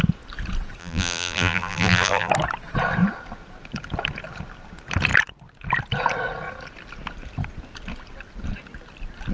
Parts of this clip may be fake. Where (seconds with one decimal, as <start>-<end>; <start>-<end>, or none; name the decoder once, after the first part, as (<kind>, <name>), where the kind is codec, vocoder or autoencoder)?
0.8-2.3 (vocoder, BigVGAN v2)